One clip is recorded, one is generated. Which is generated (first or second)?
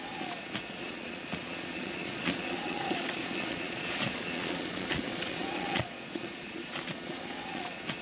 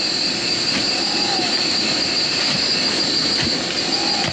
first